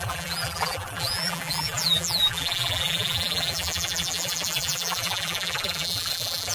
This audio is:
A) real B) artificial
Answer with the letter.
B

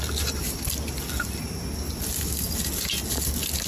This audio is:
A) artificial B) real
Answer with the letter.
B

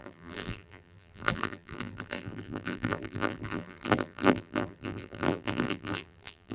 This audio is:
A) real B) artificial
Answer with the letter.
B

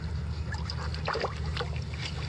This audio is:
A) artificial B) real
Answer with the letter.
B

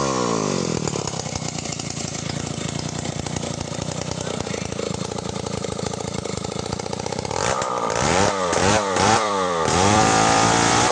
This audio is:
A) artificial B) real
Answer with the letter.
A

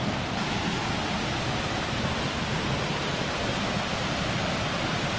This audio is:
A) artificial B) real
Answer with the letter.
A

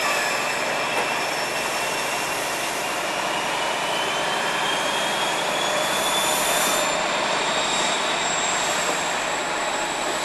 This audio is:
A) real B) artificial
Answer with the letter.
B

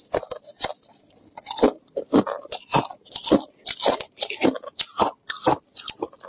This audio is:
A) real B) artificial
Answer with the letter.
A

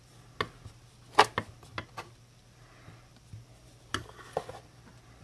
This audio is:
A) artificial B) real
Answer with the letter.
B